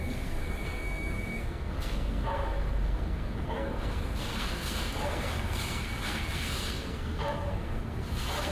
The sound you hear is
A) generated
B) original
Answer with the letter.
A